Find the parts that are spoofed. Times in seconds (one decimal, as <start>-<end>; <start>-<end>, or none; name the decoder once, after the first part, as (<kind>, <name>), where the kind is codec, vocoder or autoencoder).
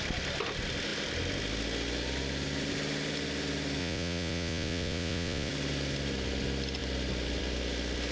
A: 3.8-5.5 (vocoder, Vocos)